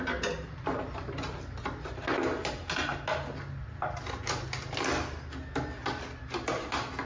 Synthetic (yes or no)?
no